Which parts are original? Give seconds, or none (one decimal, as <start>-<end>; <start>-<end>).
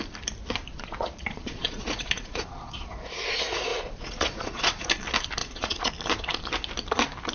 0.0-0.7; 2.9-3.7; 4.9-5.4; 5.9-7.3